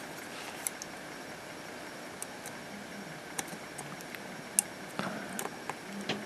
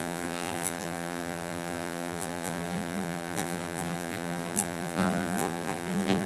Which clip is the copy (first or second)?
second